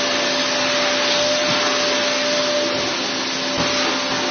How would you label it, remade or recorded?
recorded